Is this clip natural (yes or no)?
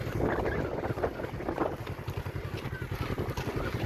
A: yes